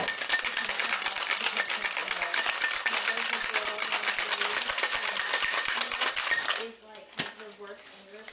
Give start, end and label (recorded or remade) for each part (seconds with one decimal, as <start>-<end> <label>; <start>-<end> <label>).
0.0-8.3 recorded